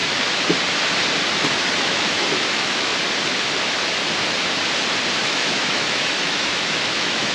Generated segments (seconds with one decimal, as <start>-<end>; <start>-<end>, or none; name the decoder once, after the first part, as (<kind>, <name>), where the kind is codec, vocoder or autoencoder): 1.8-2.9 (autoencoder, DAC-VAE); 5.2-7.3